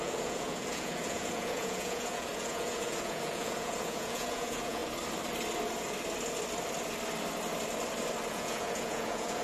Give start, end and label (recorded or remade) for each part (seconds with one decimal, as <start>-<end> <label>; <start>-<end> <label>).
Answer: 0.0-4.8 remade; 4.8-8.3 recorded; 8.3-9.4 remade